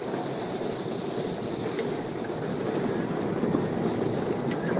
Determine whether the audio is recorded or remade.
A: recorded